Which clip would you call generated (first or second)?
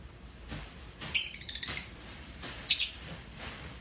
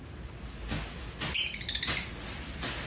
first